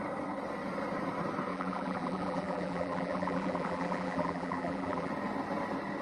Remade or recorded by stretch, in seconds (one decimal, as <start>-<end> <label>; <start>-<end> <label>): 0.0-1.5 recorded; 1.5-5.1 remade; 5.1-6.0 recorded